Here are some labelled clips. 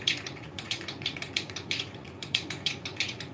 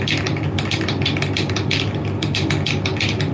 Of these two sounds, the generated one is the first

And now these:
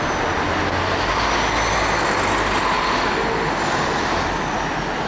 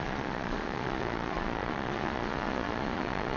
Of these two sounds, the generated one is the second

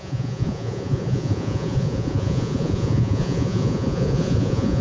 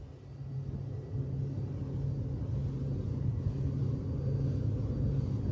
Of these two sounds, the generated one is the first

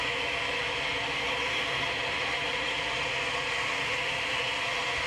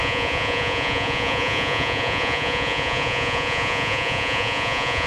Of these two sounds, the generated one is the second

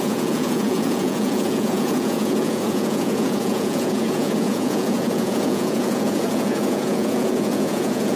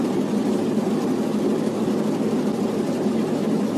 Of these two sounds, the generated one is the first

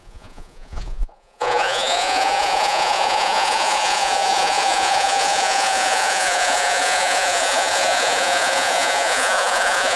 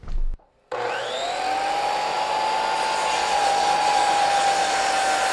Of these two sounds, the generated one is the first